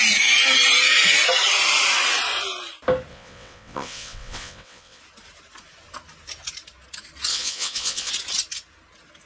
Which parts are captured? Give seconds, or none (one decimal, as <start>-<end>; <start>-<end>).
0.0-3.1; 5.0-7.3; 8.1-9.3